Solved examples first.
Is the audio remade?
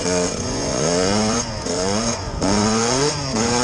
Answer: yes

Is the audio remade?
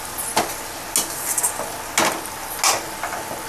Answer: no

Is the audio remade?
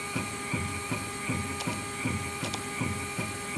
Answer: no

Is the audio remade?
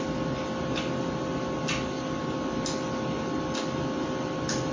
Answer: no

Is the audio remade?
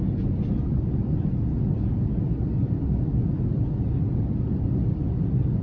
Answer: no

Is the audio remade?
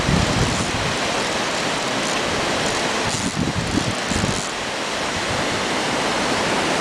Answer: no